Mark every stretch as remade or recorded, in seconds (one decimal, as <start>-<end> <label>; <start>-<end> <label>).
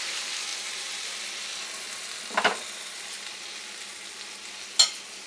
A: 0.0-5.3 recorded